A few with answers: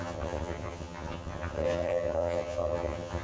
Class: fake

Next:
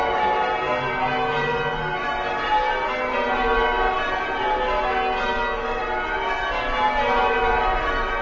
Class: real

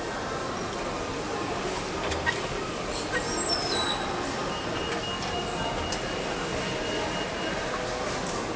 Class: real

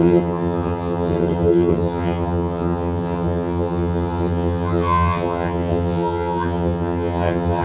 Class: fake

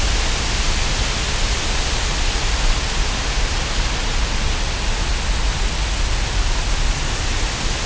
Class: real